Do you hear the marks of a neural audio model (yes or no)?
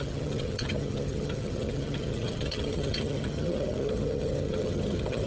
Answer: yes